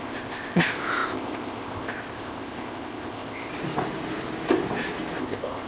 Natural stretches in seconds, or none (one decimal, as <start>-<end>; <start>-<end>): 3.5-5.2